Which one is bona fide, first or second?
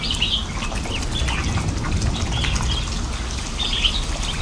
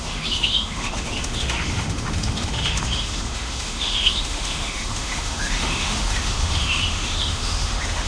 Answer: first